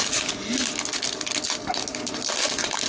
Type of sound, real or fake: real